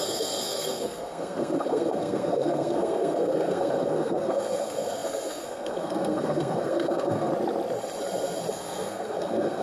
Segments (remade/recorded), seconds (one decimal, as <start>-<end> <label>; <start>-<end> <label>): 0.0-7.3 remade; 7.3-8.5 recorded; 8.5-9.6 remade